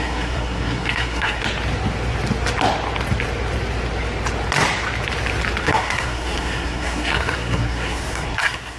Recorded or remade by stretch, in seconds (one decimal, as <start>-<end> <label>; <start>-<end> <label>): 0.0-1.4 remade; 1.4-5.6 recorded; 5.6-8.8 remade